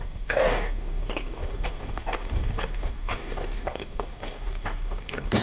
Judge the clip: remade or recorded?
remade